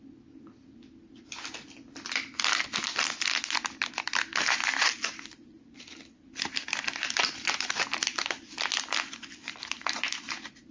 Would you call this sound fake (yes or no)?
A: no